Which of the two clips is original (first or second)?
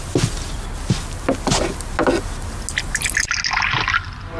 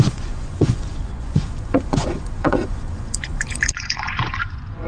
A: first